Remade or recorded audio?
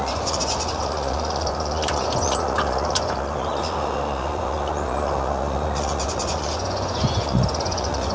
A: remade